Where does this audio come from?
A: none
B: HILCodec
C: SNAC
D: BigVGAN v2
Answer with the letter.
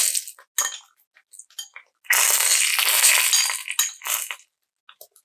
A